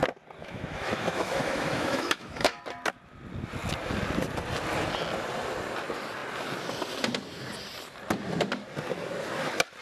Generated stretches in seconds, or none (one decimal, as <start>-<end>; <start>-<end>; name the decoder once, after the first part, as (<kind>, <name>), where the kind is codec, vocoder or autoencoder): 0.4-2.6 (autoencoder, DAC-VAE)